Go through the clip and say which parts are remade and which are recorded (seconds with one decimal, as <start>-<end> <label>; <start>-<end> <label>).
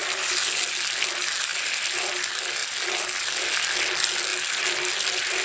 0.0-5.4 recorded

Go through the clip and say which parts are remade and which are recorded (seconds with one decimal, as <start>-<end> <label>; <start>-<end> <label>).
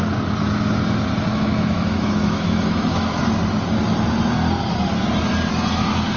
0.0-1.3 recorded; 1.3-3.2 remade; 3.2-6.2 recorded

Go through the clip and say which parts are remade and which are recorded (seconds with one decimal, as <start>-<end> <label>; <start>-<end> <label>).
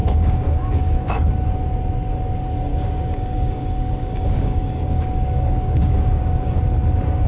0.0-1.3 remade; 1.3-2.7 recorded; 2.7-6.6 remade; 6.6-7.3 recorded